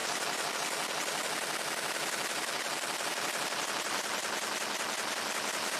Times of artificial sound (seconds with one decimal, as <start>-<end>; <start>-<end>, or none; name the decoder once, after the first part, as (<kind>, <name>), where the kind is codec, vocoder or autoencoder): none